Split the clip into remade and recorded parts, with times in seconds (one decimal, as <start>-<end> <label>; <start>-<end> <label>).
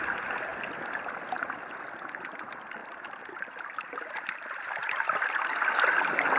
0.0-6.4 recorded